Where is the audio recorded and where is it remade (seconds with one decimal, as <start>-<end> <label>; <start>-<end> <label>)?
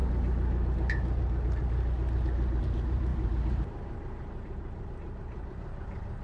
0.0-2.6 recorded; 2.6-6.2 remade